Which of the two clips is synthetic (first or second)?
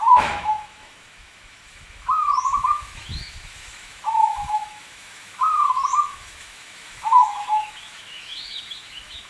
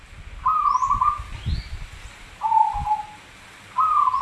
first